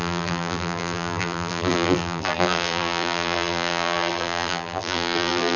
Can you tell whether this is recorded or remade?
remade